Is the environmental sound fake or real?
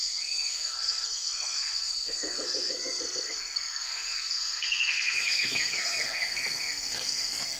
fake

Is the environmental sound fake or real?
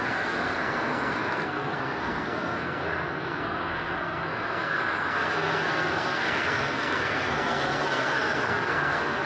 fake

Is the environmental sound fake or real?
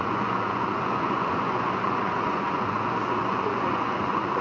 fake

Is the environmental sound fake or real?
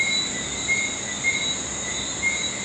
real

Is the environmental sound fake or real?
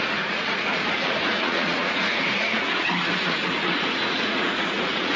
fake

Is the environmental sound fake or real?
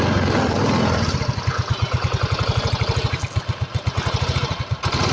real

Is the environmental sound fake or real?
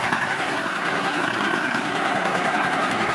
fake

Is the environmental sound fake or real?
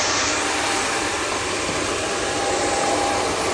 fake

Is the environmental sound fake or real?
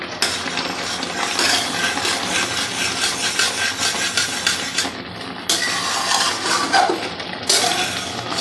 real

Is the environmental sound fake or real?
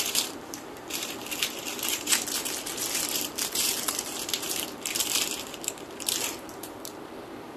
fake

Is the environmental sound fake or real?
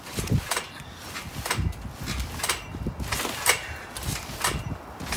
real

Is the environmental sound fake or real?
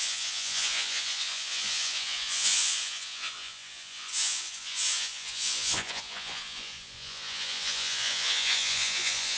fake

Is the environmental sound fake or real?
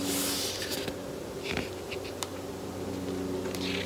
real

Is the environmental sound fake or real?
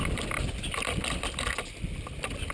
real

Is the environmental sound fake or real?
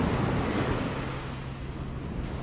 real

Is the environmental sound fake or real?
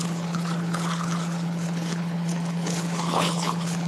fake